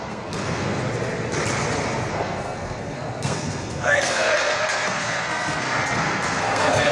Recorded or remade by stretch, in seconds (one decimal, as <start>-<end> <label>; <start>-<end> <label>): 0.0-0.8 remade; 0.8-2.1 recorded; 2.1-6.9 remade